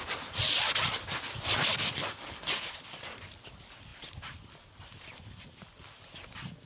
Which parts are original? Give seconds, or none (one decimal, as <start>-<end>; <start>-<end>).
0.0-2.0; 2.5-6.7